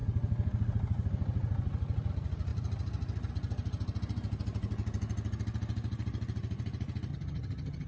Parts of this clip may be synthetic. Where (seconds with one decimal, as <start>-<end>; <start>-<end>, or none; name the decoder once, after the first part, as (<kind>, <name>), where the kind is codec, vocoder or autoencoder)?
7.1-7.9 (vocoder, HiFi-GAN)